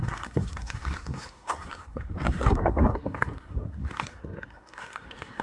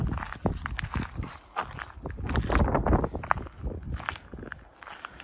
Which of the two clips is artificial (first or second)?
first